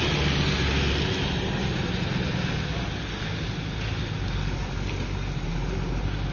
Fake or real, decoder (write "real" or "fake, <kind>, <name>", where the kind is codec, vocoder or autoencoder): real